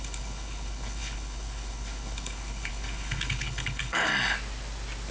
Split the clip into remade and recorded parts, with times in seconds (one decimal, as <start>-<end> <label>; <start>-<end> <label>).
0.0-4.1 remade; 4.1-5.1 recorded